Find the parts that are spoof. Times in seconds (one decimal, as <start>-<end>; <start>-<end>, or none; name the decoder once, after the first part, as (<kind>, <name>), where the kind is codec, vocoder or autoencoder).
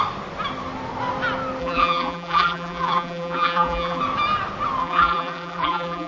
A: 1.6-4.0 (vocoder, BigVGAN v2); 4.8-6.1